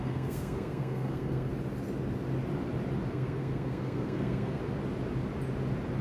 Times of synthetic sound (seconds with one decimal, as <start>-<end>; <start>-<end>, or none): 0.0-1.5; 3.1-4.6